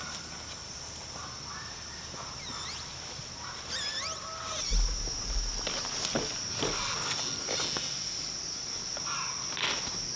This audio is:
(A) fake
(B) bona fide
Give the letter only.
B